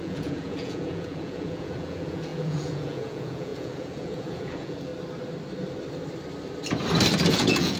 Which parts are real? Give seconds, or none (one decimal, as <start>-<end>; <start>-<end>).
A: 4.9-7.3